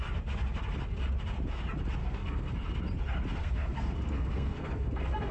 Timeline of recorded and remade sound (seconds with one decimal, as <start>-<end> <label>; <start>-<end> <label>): 0.0-2.0 recorded; 2.0-2.5 remade; 2.5-3.4 recorded; 3.4-5.3 remade